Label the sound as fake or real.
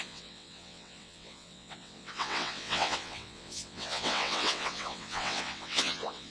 fake